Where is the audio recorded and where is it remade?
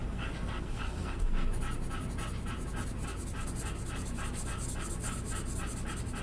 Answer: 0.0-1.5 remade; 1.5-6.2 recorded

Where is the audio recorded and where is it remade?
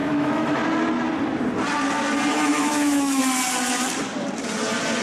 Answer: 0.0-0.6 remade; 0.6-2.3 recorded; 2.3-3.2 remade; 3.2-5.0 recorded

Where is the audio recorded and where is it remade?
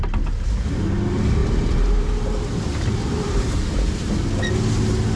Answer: 0.0-1.4 recorded; 1.4-4.1 remade; 4.1-5.2 recorded